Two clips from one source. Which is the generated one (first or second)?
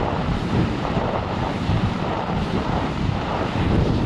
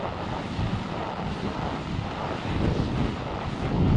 first